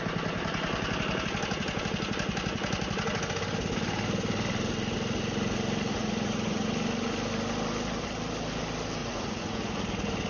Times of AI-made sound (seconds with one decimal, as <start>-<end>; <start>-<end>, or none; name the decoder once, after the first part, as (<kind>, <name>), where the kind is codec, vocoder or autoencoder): 5.9-6.7 (vocoder, Vocos); 9.0-9.6